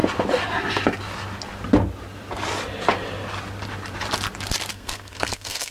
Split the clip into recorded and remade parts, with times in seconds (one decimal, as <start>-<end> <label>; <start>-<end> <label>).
0.0-4.7 recorded; 4.7-5.7 remade